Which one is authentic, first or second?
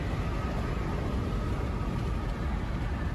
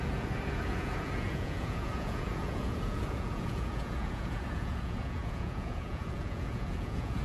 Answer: first